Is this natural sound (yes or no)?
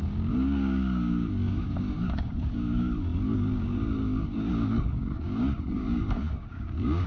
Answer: no